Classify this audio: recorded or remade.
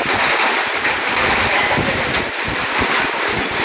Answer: recorded